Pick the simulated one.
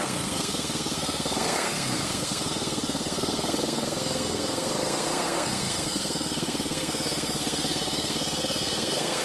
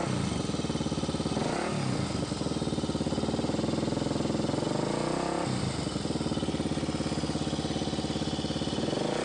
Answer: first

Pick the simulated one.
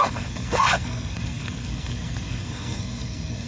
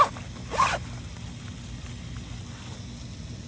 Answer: first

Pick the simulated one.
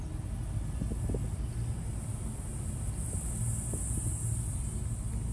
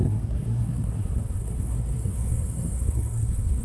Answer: second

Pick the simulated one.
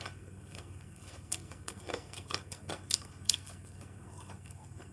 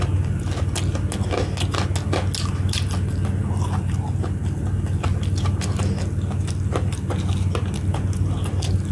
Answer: first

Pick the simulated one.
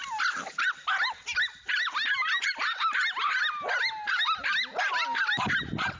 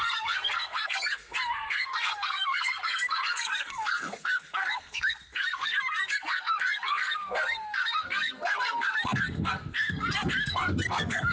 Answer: second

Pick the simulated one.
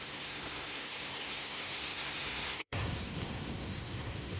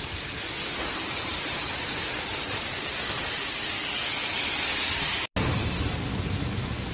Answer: first